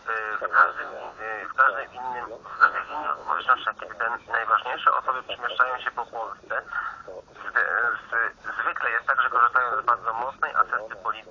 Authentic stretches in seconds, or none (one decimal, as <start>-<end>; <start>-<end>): 0.0-0.5; 1.2-2.5; 3.4-11.3